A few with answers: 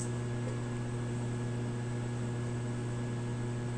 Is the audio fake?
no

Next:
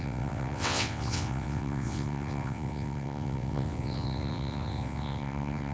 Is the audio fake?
yes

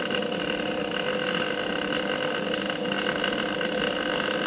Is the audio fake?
no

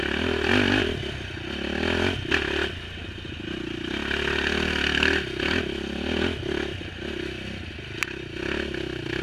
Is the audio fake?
no